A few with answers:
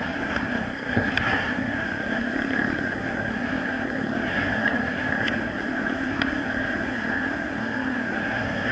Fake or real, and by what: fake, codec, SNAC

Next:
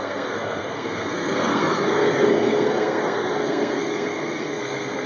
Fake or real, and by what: fake, codec, SNAC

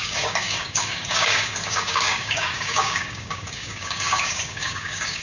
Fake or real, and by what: fake, codec, DAC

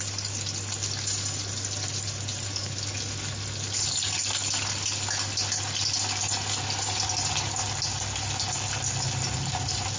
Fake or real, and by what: real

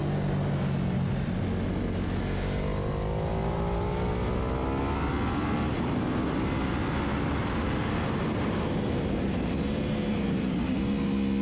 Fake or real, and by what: real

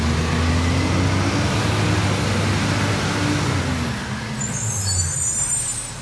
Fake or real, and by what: real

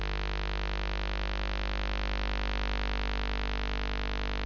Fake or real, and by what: real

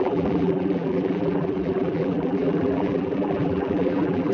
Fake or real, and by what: fake, vocoder, BigVGAN v2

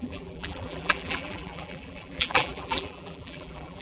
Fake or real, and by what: fake, vocoder, BigVGAN v2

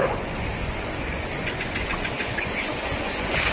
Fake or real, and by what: fake, vocoder, Vocos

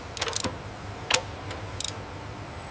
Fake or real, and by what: real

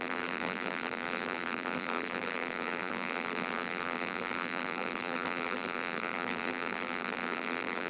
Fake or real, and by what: fake, vocoder, BigVGAN v2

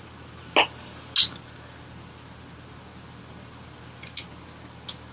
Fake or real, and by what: real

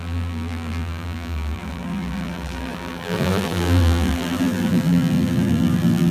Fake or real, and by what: fake, vocoder, BigVGAN v2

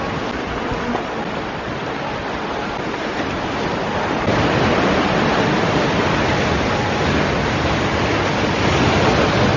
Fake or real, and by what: real